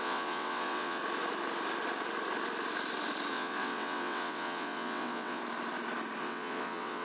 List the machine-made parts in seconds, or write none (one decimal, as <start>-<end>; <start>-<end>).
0.0-1.0; 3.3-5.4; 6.2-7.0